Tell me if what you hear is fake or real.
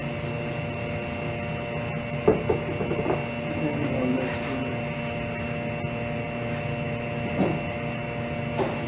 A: real